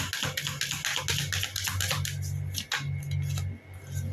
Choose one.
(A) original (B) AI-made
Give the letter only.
A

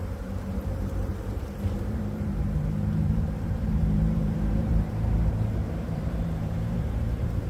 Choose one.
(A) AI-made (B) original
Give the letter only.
A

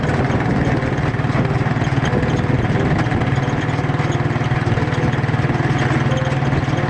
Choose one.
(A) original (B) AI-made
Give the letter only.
A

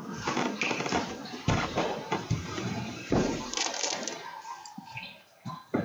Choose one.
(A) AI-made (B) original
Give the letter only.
A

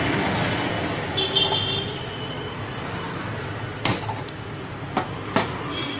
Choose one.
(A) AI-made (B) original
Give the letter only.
B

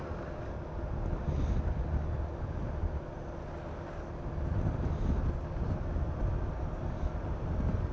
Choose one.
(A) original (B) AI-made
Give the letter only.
A